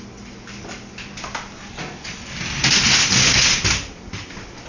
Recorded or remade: recorded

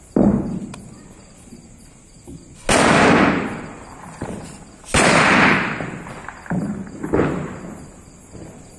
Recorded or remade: recorded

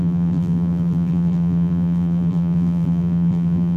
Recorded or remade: remade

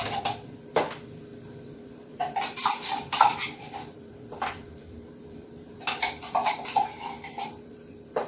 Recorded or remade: remade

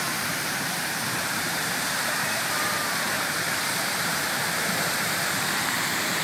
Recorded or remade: remade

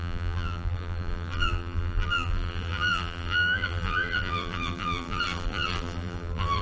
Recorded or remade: remade